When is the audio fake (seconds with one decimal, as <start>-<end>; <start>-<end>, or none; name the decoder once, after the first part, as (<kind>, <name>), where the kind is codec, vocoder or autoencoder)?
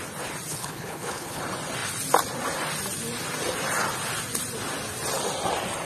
0.5-1.4 (codec, HILCodec)